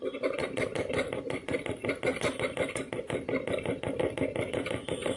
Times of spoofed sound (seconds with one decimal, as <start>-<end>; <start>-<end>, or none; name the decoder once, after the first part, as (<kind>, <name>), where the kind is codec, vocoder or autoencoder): none